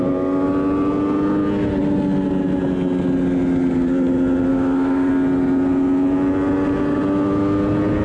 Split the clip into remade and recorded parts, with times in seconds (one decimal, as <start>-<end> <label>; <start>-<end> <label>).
0.0-4.5 recorded; 4.5-5.1 remade; 5.1-8.0 recorded